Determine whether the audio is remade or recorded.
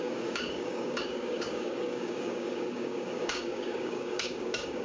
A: remade